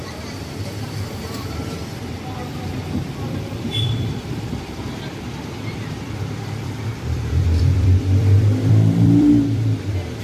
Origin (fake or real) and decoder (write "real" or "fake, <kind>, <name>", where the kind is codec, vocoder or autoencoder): fake, vocoder, BigVGAN v2